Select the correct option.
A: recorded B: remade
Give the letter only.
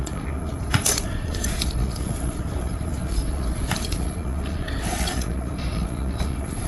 B